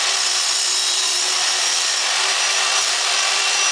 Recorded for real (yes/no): yes